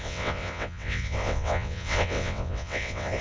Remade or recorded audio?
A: remade